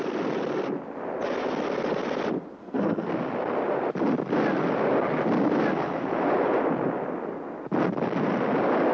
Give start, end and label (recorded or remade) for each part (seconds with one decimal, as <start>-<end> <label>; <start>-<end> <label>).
0.0-2.6 recorded; 2.6-3.1 remade; 3.1-8.9 recorded